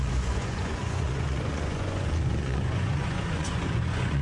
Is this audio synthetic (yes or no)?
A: yes